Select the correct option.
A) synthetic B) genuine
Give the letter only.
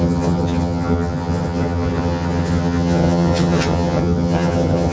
A